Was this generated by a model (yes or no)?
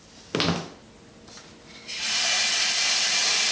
no